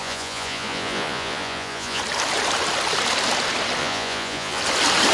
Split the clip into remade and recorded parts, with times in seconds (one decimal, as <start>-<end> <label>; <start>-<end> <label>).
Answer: 0.0-2.0 remade; 2.0-3.8 recorded; 3.8-4.6 remade; 4.6-5.1 recorded